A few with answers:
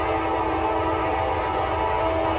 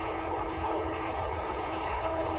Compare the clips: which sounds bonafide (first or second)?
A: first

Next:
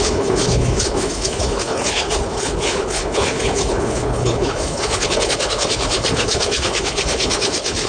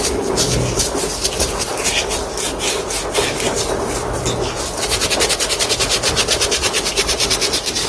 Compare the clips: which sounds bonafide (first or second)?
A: second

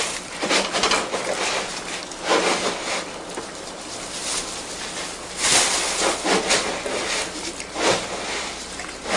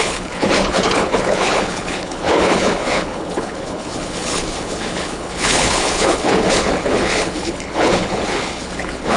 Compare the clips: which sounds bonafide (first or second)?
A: first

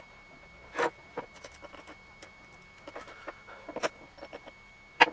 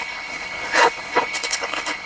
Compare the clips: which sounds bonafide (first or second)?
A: first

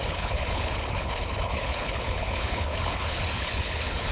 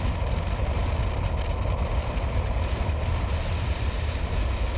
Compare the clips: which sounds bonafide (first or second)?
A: second